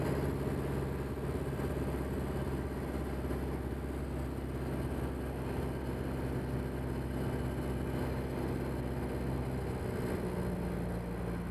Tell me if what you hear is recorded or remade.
recorded